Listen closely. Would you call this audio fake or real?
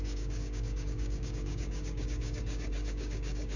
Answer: fake